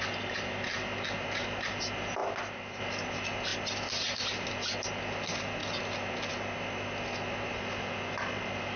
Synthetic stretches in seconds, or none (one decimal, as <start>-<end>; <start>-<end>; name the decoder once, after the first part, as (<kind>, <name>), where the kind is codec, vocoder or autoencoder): none

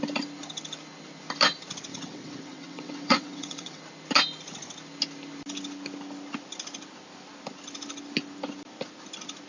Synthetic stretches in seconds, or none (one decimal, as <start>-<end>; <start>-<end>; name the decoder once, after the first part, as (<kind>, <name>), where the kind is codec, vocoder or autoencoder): 1.9-3.8 (vocoder, WaveNeXt)

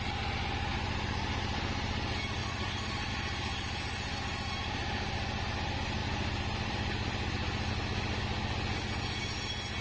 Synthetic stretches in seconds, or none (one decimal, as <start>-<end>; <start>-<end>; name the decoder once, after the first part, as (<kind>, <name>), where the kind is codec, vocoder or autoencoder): 0.7-1.7 (vocoder, BigVGAN v2); 2.4-3.1; 6.0-7.7

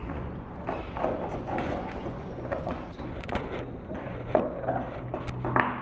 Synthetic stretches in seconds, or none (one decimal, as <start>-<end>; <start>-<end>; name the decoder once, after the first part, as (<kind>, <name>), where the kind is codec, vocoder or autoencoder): 0.0-0.5 (vocoder, Vocos); 1.3-4.4

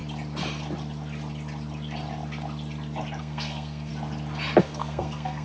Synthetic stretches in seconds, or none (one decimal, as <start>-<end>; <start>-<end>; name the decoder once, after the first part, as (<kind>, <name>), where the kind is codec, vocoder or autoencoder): 3.2-3.9 (codec, SNAC); 4.6-5.4